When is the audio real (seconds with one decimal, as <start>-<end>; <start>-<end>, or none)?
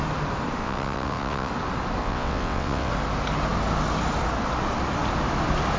0.0-0.6; 1.5-2.0; 2.9-5.8